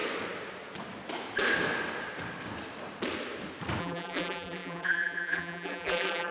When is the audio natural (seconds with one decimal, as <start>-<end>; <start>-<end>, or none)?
0.0-3.8